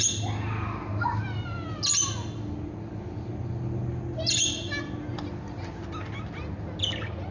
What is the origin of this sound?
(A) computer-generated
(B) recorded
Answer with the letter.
B